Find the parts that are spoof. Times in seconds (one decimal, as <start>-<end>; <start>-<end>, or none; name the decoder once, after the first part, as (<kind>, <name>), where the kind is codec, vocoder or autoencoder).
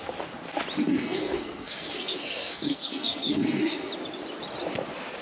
0.8-3.9 (codec, SNAC)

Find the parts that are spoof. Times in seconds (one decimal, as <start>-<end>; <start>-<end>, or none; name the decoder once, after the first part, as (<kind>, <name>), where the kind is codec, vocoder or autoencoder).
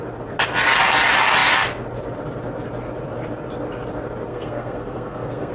4.3-5.5 (codec, SNAC)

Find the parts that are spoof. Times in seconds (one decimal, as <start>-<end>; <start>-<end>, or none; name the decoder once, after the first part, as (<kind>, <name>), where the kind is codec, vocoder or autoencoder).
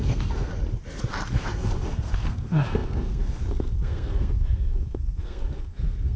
0.0-0.5 (codec, SNAC); 1.0-6.2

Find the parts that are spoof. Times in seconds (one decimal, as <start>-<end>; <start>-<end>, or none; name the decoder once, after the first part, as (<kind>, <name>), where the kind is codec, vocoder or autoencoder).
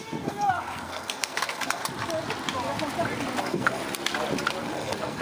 0.0-1.8 (codec, SNAC); 3.4-3.8; 4.6-5.2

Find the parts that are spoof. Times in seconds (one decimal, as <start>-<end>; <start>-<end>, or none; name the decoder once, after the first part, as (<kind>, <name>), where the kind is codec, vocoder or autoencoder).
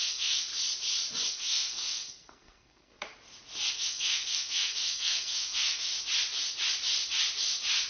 0.0-0.5 (codec, SNAC); 1.3-2.9; 3.7-5.9